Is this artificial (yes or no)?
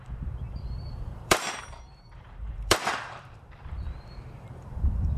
yes